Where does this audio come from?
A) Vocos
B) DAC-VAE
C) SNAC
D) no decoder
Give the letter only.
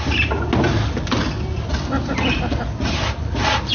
D